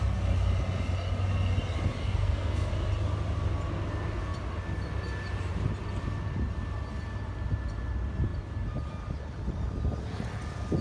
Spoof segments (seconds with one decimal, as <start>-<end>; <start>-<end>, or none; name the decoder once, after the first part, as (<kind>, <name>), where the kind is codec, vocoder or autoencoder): 2.0-2.7 (codec, SNAC)